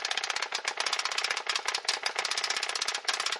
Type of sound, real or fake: real